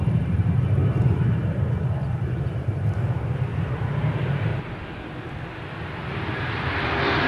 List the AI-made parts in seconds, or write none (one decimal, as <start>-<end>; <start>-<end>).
0.0-4.5; 6.1-7.3